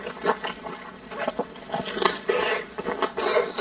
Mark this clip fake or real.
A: real